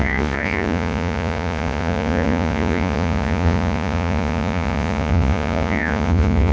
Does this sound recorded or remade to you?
remade